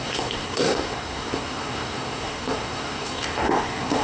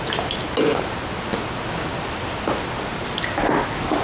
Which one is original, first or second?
second